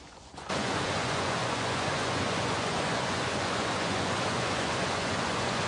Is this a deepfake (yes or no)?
yes